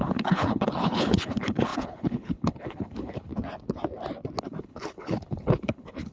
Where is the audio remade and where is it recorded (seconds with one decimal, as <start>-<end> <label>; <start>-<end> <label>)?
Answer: 0.0-3.3 remade; 3.3-4.4 recorded; 4.4-6.1 remade